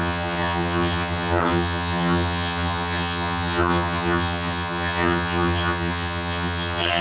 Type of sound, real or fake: fake